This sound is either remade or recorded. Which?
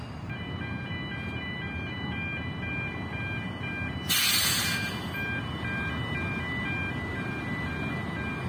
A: recorded